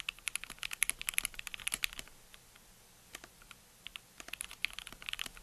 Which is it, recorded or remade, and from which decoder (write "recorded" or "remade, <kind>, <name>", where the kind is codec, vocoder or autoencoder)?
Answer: recorded